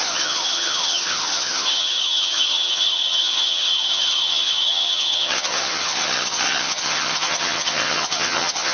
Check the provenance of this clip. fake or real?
fake